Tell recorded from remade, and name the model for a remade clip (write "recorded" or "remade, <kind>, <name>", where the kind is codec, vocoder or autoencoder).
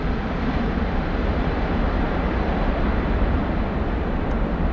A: recorded